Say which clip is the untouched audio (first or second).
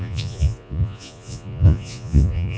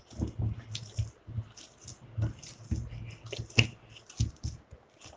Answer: second